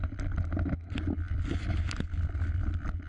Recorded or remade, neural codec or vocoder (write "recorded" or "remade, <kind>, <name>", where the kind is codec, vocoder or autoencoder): recorded